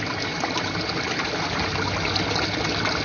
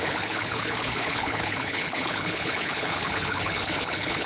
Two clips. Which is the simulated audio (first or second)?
second